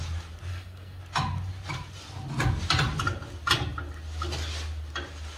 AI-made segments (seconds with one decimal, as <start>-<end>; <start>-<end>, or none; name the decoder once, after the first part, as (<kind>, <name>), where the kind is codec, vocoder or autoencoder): 0.5-1.0 (codec, SNAC)